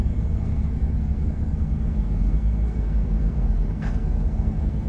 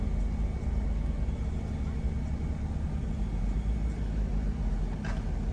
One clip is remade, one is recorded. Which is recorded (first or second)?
second